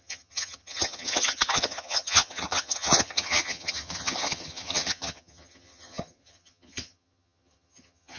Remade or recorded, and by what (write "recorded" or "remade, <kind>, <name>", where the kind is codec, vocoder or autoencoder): remade, vocoder, HiFi-GAN